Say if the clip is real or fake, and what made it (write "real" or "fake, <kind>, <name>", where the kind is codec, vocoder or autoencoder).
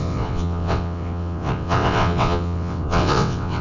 fake, vocoder, WaveNeXt